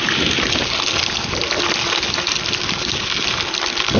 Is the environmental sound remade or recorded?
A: recorded